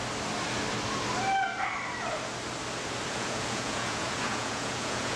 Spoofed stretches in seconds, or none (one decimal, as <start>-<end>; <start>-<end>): 3.1-5.2